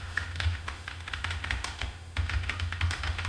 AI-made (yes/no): yes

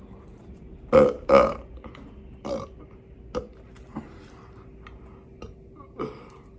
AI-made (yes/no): no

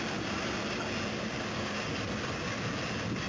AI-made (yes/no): no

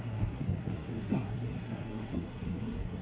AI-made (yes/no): yes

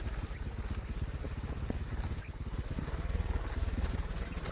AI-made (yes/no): no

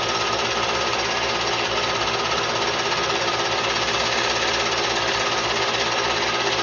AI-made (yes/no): no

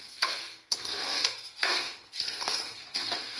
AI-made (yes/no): yes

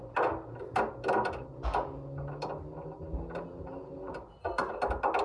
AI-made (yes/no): no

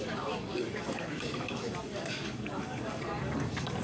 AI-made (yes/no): yes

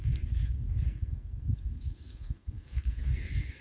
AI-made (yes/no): yes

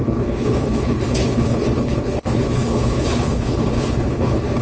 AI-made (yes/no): yes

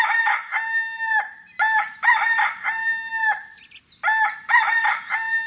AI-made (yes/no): no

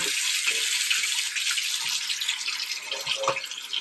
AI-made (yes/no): no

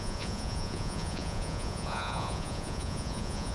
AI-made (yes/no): yes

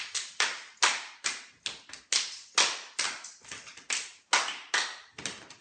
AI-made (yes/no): no